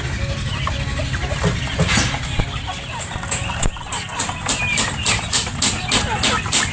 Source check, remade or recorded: recorded